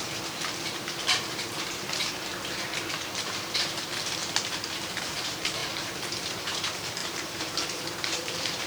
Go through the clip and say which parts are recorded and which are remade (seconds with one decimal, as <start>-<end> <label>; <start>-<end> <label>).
0.0-2.3 remade; 2.3-2.9 recorded; 2.9-8.7 remade